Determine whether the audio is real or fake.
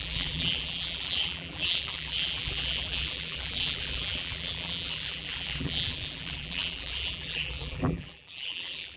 fake